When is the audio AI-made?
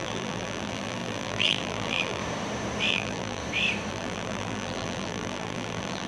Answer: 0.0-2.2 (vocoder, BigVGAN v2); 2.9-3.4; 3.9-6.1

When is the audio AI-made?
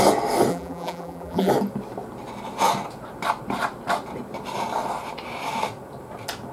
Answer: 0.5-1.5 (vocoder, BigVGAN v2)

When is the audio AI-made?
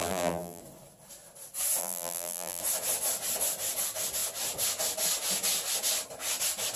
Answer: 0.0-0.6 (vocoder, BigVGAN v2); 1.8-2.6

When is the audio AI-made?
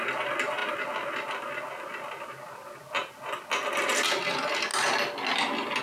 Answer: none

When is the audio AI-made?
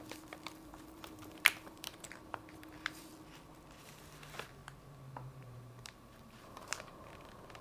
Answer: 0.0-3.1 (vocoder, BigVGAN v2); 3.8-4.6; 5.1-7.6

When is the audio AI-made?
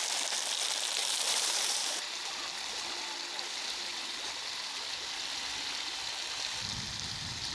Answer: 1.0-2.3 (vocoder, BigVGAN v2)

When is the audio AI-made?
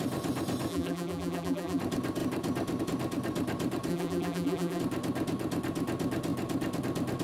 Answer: 0.7-1.8 (vocoder, BigVGAN v2); 3.9-4.8